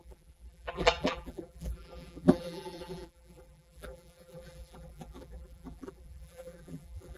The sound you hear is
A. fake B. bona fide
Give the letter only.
A